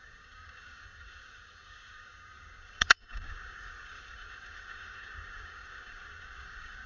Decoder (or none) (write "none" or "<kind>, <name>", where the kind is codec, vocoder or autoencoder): codec, DAC